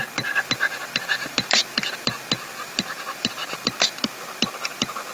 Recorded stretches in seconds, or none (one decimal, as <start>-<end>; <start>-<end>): 0.0-1.1; 1.8-2.6; 3.6-5.1